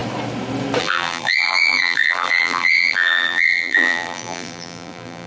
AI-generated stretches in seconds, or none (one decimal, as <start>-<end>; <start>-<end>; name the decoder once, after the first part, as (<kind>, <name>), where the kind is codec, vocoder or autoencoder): 0.8-5.3 (vocoder, BigVGAN v2)

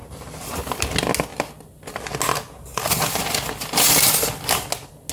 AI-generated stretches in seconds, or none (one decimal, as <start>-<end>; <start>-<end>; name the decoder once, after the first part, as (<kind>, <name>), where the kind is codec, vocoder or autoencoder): none

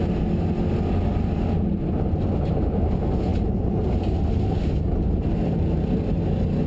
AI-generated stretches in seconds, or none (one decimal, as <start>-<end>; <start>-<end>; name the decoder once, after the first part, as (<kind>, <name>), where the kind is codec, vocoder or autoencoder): 1.1-1.9 (vocoder, BigVGAN v2); 3.3-6.2

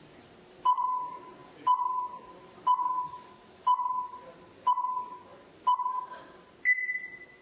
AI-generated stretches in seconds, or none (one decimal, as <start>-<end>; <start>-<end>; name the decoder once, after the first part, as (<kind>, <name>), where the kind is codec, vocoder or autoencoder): none

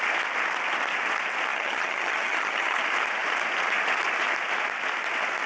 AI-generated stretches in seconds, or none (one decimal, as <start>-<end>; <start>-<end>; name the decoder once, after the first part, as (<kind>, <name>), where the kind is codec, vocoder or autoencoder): 1.5-2.8 (vocoder, HiFi-GAN)

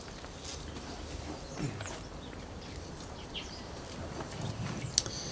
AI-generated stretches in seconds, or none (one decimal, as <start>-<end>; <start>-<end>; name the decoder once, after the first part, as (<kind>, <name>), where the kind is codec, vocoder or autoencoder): none

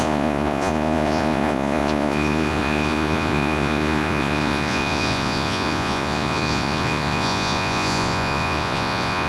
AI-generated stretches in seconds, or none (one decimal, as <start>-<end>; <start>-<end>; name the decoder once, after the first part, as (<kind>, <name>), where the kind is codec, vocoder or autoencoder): 0.0-9.3 (vocoder, Vocos)

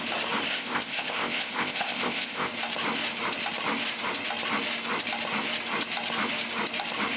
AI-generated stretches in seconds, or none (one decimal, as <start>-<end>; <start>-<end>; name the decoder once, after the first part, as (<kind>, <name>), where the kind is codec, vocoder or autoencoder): 0.5-2.5 (codec, ZipCodec)